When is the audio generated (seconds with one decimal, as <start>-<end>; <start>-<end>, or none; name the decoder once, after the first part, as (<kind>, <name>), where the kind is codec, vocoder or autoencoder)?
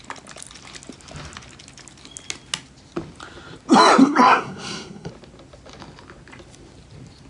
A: 4.0-5.1 (codec, SNAC)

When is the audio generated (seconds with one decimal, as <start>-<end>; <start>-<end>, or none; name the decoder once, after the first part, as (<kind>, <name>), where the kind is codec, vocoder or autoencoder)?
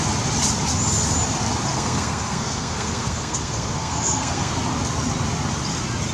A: 1.7-4.5 (codec, SNAC)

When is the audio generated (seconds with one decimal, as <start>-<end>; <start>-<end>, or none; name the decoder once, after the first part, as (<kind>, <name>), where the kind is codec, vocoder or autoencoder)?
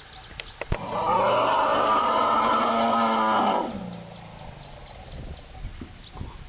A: none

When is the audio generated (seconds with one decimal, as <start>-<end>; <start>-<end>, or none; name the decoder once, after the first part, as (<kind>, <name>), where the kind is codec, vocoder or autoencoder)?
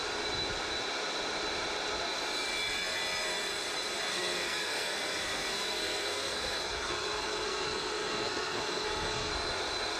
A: 4.1-9.3 (codec, SNAC)